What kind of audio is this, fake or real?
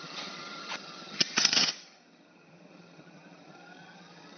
fake